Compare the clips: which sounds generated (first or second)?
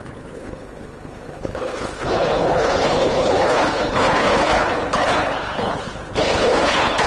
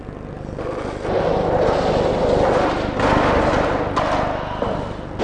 first